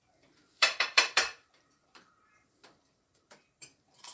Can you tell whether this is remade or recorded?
remade